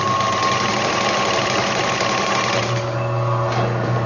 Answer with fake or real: real